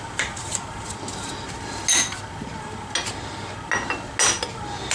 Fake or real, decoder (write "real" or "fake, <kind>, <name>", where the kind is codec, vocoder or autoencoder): real